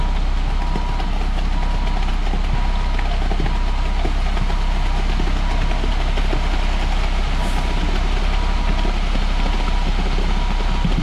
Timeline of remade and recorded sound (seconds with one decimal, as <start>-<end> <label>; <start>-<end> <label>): 0.0-11.0 recorded